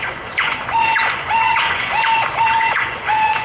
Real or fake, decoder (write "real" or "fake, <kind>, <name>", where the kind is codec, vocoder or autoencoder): fake, vocoder, Vocos